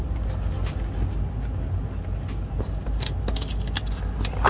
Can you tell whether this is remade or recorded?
recorded